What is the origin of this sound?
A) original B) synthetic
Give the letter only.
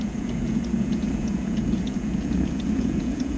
B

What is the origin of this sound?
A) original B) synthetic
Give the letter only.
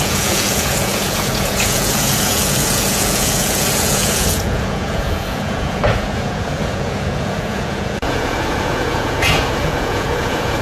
B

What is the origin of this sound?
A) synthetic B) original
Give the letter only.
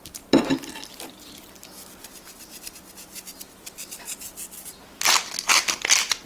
B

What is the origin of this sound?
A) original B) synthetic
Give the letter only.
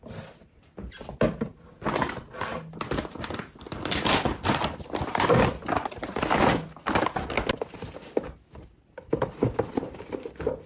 A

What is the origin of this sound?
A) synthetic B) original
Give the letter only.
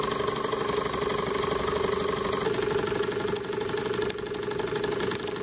B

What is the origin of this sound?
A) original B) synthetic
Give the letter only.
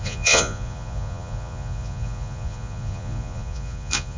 B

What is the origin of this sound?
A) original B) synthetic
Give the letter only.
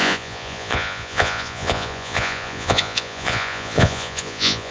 B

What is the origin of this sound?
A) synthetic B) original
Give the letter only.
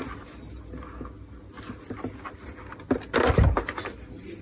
B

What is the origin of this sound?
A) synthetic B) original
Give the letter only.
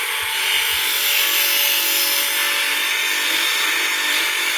B